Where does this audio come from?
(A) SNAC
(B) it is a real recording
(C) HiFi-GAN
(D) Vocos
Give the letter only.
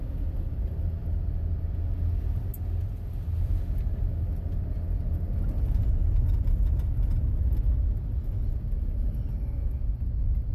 B